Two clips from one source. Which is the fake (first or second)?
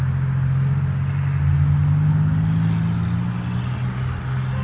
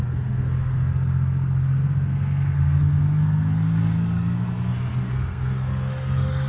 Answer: second